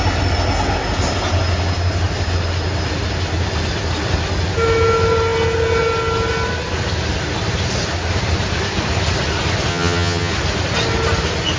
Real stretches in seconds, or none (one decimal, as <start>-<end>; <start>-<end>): 0.0-9.7; 10.3-11.6